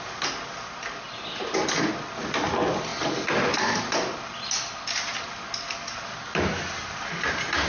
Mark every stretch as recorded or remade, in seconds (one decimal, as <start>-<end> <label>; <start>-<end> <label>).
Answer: 0.0-7.7 recorded